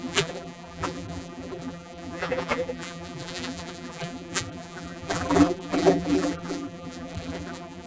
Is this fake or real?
fake